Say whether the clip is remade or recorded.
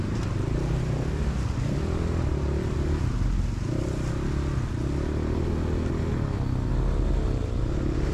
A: recorded